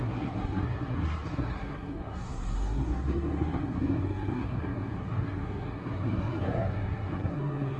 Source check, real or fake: fake